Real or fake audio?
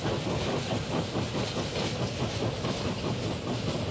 real